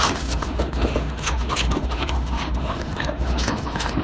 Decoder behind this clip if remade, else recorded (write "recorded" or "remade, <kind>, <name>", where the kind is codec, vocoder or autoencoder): remade, autoencoder, DAC-VAE